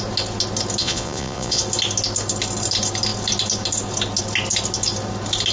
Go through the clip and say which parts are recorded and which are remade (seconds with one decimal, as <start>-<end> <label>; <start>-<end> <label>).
0.0-0.8 recorded; 0.8-1.6 remade; 1.6-5.5 recorded